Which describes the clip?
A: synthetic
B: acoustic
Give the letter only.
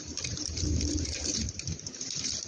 A